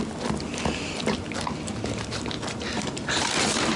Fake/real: real